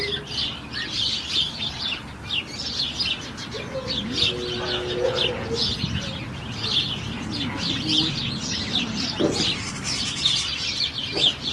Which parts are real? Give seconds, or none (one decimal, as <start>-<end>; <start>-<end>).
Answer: 0.0-1.0; 1.6-11.5